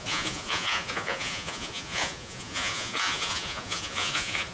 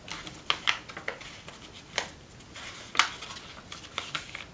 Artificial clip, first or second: first